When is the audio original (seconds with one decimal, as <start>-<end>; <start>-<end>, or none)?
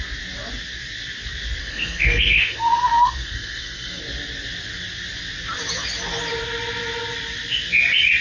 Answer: 0.0-1.6; 4.0-8.2